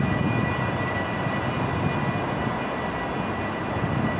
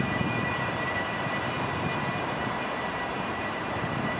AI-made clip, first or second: second